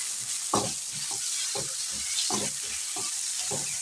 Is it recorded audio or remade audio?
recorded